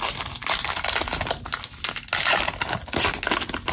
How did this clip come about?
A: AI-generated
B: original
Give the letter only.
B